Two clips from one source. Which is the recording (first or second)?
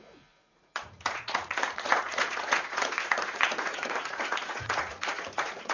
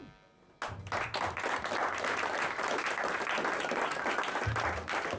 second